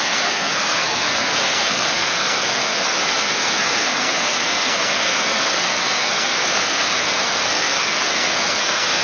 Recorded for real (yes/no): no